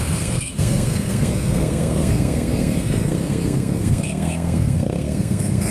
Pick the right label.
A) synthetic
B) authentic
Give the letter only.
A